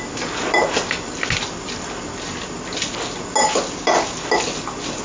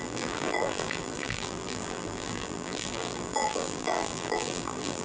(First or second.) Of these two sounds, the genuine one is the first